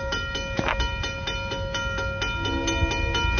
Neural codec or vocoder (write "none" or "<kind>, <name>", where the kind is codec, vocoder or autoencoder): none